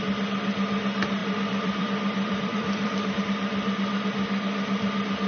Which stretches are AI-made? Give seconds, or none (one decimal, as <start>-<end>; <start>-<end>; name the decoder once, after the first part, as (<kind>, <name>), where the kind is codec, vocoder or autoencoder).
1.2-3.2 (vocoder, BigVGAN v2)